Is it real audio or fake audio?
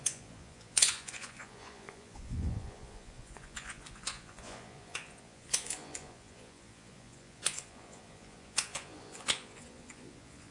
fake